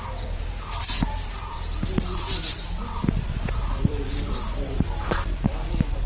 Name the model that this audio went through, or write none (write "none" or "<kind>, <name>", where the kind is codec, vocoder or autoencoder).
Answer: vocoder, BigVGAN v2